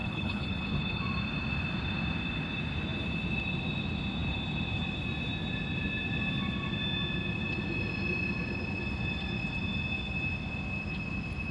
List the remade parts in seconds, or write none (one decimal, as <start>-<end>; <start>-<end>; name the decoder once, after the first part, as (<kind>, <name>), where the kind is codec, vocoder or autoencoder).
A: 0.0-1.0 (codec, HILCodec)